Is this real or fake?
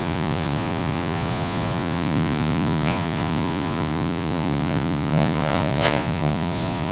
fake